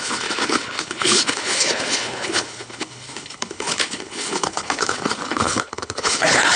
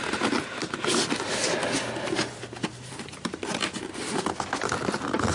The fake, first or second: first